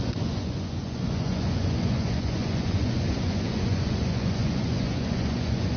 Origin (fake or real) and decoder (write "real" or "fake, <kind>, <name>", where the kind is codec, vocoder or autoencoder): fake, vocoder, Vocos